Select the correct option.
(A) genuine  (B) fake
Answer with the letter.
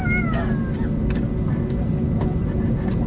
A